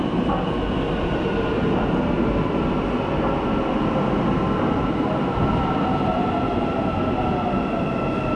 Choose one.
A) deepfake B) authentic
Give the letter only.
B